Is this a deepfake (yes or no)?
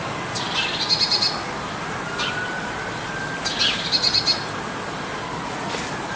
no